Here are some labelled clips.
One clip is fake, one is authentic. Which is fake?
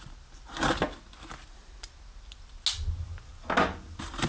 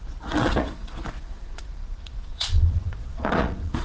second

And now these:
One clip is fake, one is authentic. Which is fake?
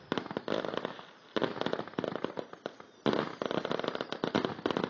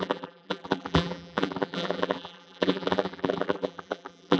second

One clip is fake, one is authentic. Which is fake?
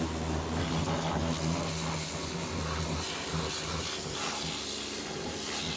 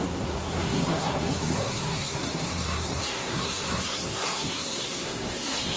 second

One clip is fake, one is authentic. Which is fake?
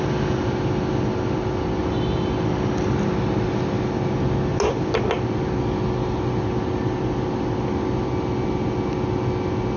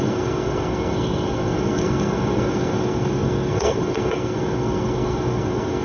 second